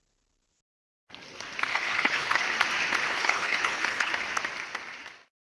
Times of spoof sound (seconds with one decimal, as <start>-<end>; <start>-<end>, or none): 1.7-2.4; 3.1-4.1